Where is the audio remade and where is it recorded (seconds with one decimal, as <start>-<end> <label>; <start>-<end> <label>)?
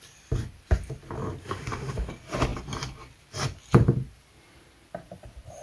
0.0-1.4 recorded; 1.4-2.1 remade; 2.1-5.6 recorded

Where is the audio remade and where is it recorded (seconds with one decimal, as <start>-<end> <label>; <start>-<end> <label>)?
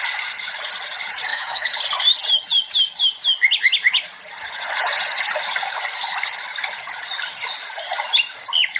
0.0-1.3 recorded; 1.3-1.8 remade; 1.8-8.8 recorded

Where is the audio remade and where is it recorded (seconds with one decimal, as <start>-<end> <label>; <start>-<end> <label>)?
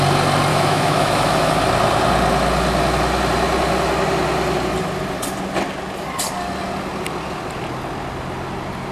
0.0-0.5 recorded; 0.5-1.5 remade; 1.5-8.9 recorded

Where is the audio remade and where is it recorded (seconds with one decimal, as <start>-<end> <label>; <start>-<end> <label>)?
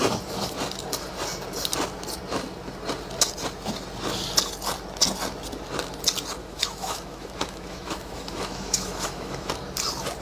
0.0-6.4 recorded; 6.4-9.5 remade; 9.5-10.2 recorded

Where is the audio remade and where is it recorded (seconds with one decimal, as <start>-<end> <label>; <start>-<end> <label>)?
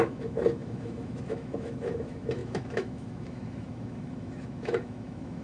0.0-5.4 remade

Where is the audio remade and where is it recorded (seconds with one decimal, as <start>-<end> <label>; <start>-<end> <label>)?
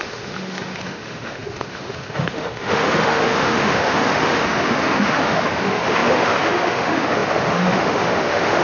0.0-8.6 remade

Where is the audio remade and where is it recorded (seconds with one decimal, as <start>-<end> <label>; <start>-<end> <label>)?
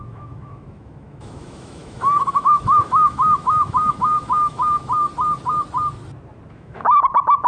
0.0-4.8 remade; 4.8-6.5 recorded; 6.5-7.5 remade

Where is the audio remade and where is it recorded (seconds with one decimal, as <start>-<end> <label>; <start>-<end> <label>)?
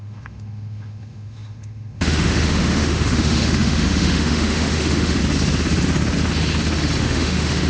0.0-5.2 remade; 5.2-7.0 recorded; 7.0-7.7 remade